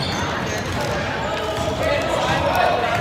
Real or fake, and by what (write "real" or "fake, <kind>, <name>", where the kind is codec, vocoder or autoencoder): real